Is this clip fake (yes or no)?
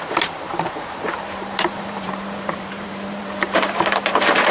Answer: yes